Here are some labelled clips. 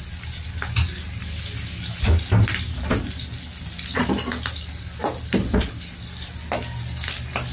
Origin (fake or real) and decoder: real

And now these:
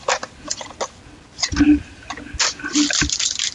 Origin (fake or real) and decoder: real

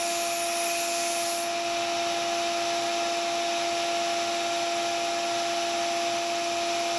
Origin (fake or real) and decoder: real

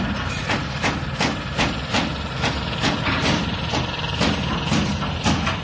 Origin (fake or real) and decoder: fake, vocoder, BigVGAN v2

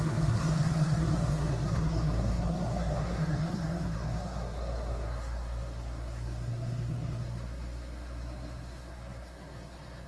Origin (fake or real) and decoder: fake, codec, SNAC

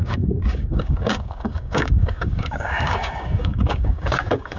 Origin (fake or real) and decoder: fake, codec, DAC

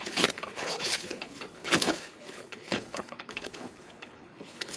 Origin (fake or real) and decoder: fake, codec, HILCodec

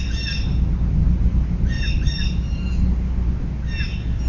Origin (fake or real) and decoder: real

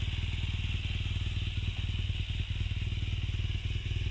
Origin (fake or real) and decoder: real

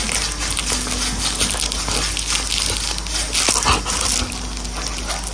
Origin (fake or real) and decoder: real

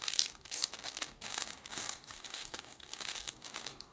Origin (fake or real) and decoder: fake, codec, DAC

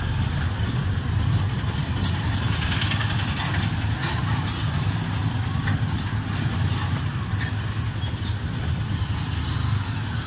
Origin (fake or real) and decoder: real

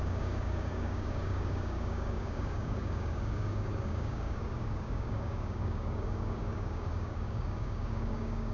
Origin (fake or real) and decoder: fake, codec, DAC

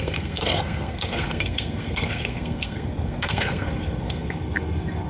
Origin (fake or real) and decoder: fake, codec, SNAC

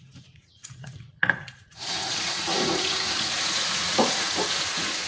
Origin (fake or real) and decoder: fake, vocoder, Vocos